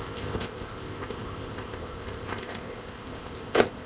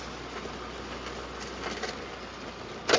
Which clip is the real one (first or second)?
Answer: second